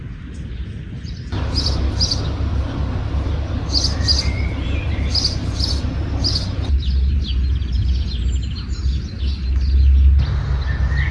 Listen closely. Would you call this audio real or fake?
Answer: real